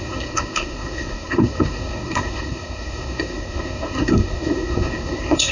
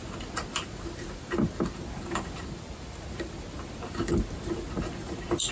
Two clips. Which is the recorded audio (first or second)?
second